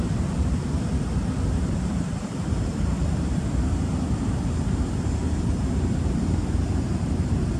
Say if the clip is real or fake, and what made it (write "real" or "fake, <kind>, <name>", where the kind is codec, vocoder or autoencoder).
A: fake, vocoder, BigVGAN v2